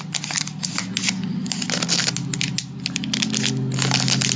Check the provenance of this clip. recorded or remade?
recorded